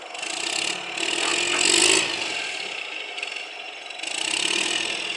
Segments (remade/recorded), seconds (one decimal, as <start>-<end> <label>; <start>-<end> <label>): 0.0-5.2 recorded